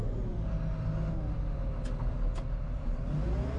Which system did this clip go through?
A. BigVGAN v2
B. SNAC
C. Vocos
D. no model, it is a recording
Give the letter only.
D